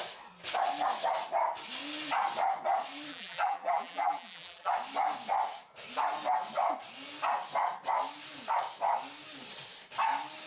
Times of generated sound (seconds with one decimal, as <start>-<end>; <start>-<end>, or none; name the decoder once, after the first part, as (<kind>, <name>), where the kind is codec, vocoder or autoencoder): 3.1-4.7 (vocoder, BigVGAN v2)